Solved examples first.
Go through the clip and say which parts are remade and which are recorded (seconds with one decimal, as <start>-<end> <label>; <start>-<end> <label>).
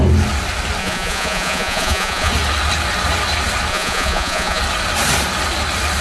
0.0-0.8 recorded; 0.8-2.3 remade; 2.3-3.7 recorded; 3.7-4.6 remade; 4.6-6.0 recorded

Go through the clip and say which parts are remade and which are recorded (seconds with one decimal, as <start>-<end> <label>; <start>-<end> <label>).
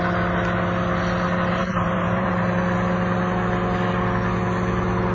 0.0-1.6 recorded; 1.6-2.3 remade; 2.3-5.1 recorded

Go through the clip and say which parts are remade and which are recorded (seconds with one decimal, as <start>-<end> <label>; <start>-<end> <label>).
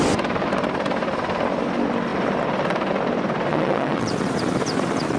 0.0-3.5 recorded; 3.5-4.1 remade; 4.1-5.2 recorded